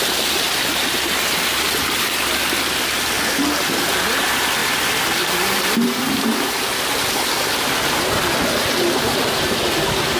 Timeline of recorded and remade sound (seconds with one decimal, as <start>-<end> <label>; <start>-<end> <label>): 0.0-4.6 recorded; 4.6-6.2 remade; 6.2-10.2 recorded